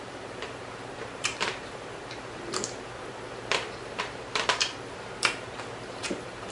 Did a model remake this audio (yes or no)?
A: yes